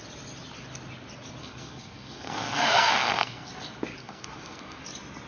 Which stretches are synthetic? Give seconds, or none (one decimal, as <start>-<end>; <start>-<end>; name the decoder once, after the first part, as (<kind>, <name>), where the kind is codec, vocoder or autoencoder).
1.4-3.5 (codec, SNAC); 4.0-4.8